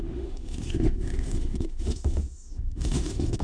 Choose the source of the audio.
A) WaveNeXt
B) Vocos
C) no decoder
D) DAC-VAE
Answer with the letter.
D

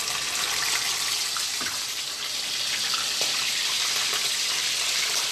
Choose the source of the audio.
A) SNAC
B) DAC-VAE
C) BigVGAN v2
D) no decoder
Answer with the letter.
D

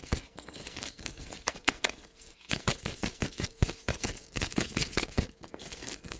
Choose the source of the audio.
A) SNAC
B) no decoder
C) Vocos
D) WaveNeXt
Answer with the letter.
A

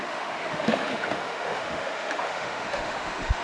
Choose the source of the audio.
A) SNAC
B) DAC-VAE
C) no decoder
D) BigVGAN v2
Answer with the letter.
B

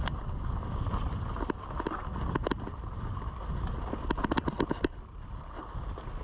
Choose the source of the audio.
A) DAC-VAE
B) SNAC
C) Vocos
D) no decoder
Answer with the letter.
D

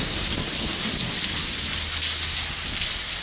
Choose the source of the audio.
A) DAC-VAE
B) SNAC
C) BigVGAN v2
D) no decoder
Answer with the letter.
D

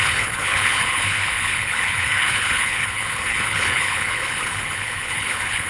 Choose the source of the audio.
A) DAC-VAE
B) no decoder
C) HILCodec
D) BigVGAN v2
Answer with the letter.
C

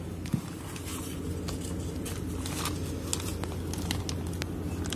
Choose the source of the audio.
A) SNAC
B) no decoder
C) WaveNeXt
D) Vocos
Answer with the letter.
B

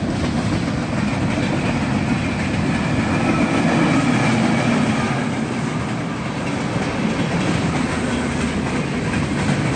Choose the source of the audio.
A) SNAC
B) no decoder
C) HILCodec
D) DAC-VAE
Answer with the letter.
B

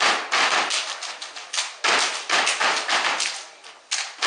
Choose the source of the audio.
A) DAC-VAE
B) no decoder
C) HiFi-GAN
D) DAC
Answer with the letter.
B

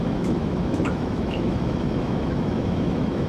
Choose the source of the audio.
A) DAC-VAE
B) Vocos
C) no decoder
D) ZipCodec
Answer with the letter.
A